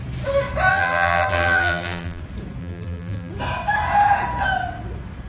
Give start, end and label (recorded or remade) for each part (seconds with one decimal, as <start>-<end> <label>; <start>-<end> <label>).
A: 0.0-0.7 recorded; 0.7-2.2 remade; 2.2-2.6 recorded; 2.6-3.3 remade; 3.3-5.3 recorded